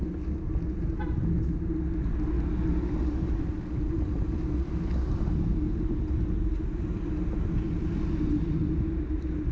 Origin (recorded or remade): recorded